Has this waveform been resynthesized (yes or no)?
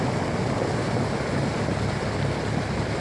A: no